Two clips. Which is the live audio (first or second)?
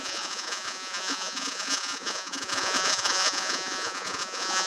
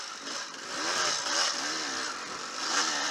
second